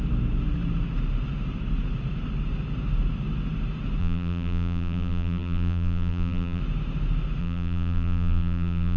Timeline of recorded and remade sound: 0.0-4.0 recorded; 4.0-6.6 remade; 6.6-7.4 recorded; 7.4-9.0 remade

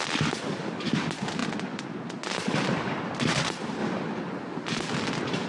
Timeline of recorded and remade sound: 0.0-1.4 remade; 1.4-3.3 recorded; 3.3-3.8 remade; 3.8-5.5 recorded

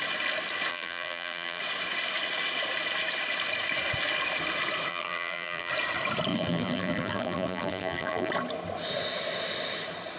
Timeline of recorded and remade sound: 0.0-0.7 recorded; 0.7-1.6 remade; 1.6-4.9 recorded; 4.9-5.7 remade; 5.7-6.3 recorded; 6.3-8.3 remade; 8.3-10.2 recorded

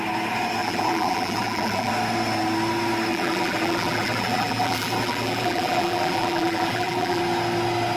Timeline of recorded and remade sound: 0.0-0.6 recorded; 0.6-1.9 remade; 1.9-3.1 recorded; 3.1-7.2 remade; 7.2-8.0 recorded